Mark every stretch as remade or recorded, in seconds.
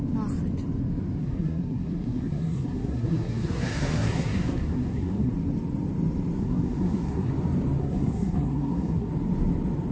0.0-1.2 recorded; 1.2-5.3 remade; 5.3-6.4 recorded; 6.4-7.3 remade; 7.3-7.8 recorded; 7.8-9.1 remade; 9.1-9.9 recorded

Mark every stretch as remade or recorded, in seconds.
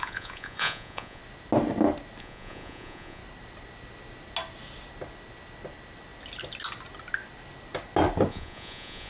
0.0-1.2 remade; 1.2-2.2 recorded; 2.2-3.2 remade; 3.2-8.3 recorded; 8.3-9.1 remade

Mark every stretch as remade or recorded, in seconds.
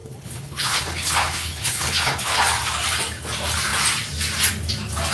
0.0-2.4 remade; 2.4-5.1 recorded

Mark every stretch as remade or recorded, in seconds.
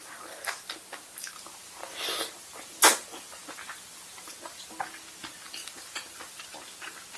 0.0-1.8 recorded; 1.8-4.3 remade; 4.3-5.6 recorded; 5.6-6.4 remade; 6.4-7.2 recorded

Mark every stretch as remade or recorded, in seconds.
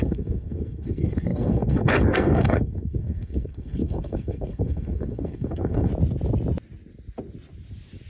0.0-5.9 remade; 5.9-8.1 recorded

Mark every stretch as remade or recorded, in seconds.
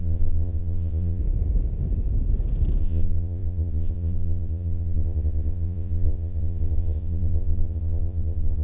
0.0-1.2 remade; 1.2-2.8 recorded; 2.8-8.6 remade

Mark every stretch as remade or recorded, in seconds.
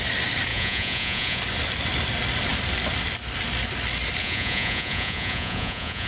0.0-0.5 recorded; 0.5-1.4 remade; 1.4-4.2 recorded; 4.2-6.1 remade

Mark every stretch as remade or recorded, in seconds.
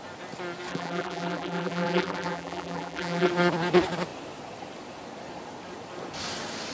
0.0-0.7 recorded; 0.7-3.3 remade; 3.3-6.7 recorded